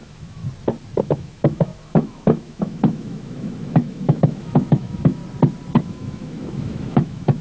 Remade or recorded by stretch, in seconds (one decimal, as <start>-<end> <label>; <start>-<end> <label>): 0.0-0.4 remade; 0.4-1.0 recorded; 1.0-5.2 remade; 5.2-5.8 recorded; 5.8-7.4 remade